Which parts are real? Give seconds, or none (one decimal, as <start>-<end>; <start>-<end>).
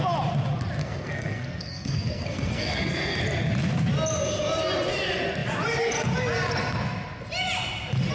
0.0-0.8; 3.2-8.1